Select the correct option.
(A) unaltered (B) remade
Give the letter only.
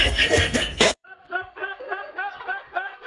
B